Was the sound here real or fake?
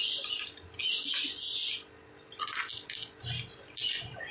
real